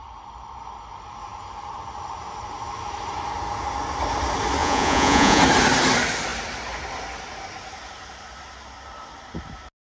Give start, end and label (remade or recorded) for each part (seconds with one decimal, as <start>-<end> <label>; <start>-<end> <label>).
0.0-4.6 recorded; 4.6-5.4 remade; 5.4-9.8 recorded